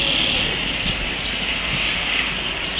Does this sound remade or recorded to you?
recorded